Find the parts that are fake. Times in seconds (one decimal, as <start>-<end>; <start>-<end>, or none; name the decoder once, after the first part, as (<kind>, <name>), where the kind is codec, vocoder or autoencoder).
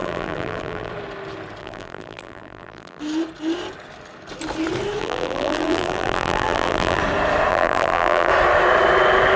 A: 0.0-0.9 (vocoder, BigVGAN v2); 1.6-3.0; 5.0-7.0; 7.5-8.3